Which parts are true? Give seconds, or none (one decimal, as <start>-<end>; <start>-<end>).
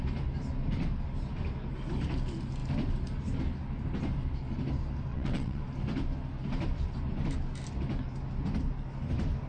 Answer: 0.0-5.1; 5.6-9.5